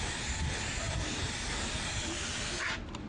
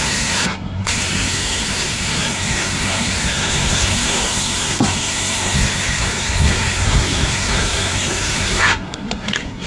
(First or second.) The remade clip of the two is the second